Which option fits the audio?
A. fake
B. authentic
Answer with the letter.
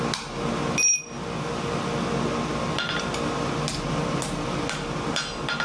B